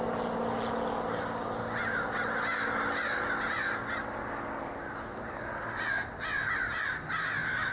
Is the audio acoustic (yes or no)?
yes